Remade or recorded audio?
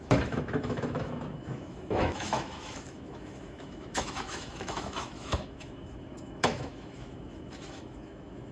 remade